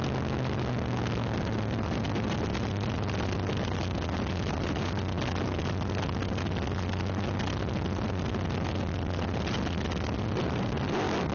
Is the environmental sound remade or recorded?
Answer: recorded